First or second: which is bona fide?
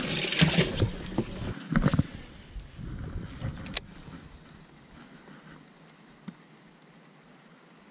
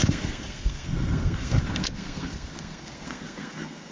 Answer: first